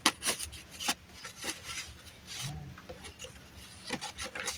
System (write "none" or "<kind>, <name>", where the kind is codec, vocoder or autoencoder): none